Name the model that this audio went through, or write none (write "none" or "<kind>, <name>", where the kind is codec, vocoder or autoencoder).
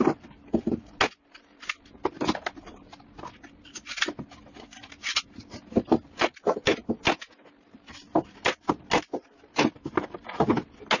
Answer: none